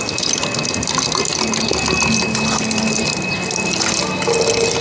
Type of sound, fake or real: real